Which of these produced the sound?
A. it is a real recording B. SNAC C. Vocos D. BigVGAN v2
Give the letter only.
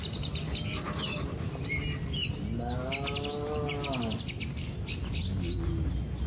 A